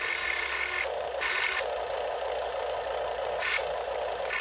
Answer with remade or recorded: recorded